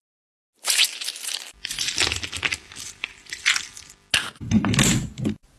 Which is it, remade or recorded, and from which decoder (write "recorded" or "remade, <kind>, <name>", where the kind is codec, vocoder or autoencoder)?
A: recorded